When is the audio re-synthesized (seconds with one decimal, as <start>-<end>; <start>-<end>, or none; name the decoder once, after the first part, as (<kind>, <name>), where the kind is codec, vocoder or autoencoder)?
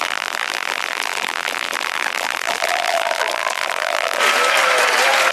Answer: 0.0-4.2 (vocoder, BigVGAN v2)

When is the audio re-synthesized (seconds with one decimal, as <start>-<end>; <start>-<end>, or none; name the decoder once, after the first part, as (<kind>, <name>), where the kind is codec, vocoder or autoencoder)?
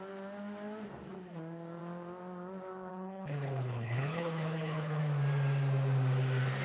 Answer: 2.9-5.0 (codec, HILCodec)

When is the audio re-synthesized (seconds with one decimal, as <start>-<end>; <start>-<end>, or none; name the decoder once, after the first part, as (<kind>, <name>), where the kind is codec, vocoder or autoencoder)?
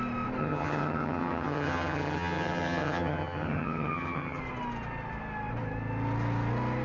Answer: 0.4-4.4 (vocoder, HiFi-GAN)